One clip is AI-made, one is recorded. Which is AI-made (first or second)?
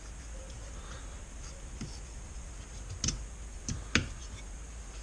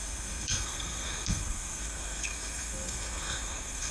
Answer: second